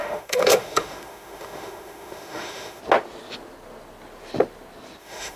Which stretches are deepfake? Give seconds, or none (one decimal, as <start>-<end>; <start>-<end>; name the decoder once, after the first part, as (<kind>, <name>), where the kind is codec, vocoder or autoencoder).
0.0-2.8 (autoencoder, DAC-VAE); 5.0-5.4